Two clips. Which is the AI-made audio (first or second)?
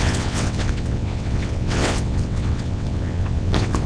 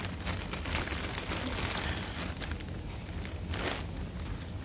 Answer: first